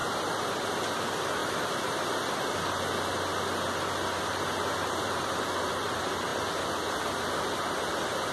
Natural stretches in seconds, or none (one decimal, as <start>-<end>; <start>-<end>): 0.0-8.3